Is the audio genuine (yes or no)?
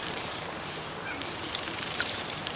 no